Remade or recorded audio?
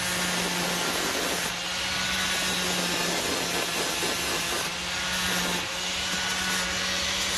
recorded